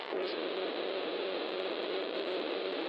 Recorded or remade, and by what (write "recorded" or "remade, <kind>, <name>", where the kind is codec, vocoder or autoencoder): remade, vocoder, Vocos